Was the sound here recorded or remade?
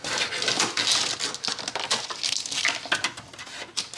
recorded